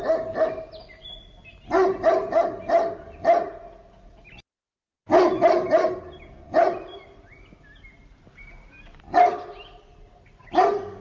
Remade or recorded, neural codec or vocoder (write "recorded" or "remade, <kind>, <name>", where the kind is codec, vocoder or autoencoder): recorded